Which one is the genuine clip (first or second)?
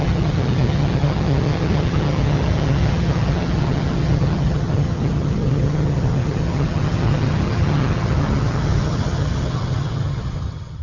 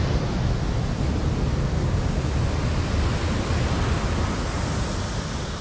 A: second